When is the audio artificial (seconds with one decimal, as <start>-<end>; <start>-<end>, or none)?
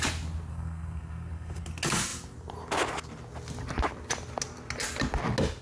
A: 0.5-1.6